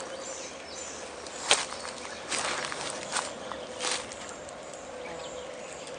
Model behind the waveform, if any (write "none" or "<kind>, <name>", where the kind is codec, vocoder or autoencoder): none